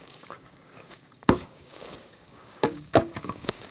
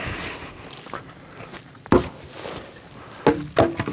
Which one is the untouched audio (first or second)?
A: second